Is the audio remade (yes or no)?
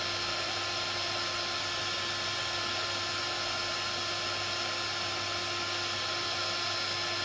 no